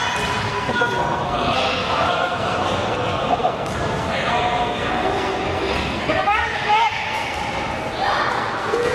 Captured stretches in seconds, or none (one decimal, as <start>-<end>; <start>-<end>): 0.0-0.5; 7.4-8.3